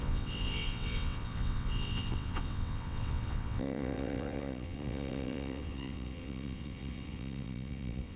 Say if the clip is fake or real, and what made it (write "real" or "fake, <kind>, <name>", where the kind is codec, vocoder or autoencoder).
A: fake, vocoder, WaveNeXt